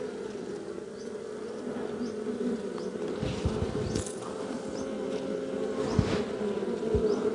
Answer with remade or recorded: recorded